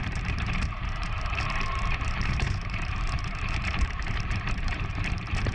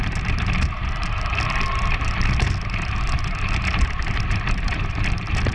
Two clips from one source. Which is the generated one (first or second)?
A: first